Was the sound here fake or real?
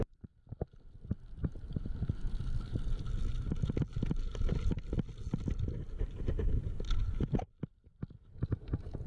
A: real